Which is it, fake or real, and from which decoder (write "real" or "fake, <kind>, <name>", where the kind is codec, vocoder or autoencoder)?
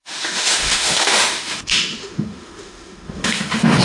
fake, autoencoder, DAC-VAE